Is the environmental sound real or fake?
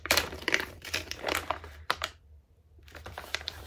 fake